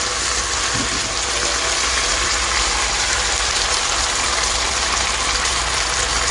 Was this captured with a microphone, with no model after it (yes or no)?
yes